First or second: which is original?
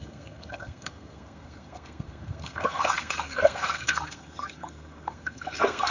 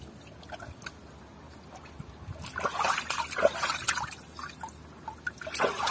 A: second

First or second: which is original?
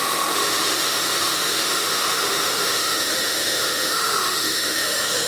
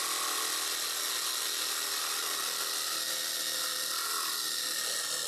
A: second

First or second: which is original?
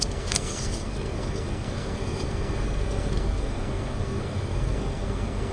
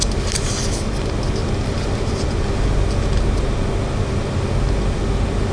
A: second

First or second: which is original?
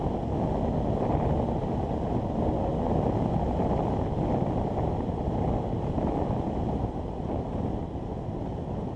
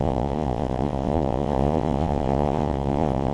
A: first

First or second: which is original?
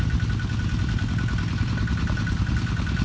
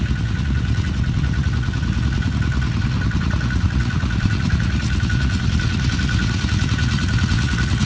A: first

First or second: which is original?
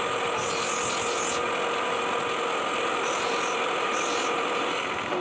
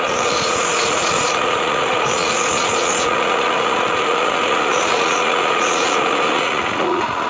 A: first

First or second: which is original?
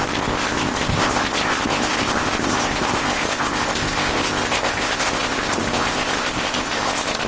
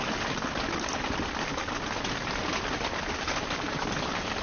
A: second